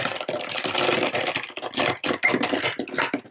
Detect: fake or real fake